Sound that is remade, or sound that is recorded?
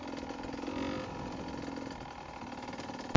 recorded